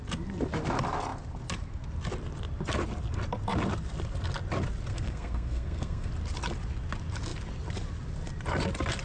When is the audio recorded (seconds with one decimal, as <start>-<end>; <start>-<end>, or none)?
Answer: 0.0-4.9; 6.1-9.0